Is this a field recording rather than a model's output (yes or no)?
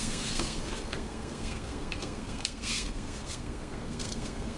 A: no